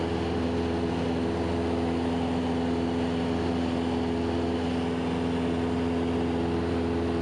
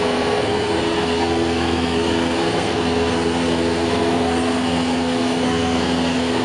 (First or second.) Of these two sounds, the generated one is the second